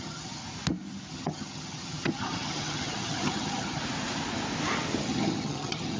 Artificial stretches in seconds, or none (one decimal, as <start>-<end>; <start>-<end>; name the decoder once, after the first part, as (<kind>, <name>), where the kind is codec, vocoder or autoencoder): 0.0-0.4 (vocoder, HiFi-GAN); 1.1-3.8; 5.0-6.0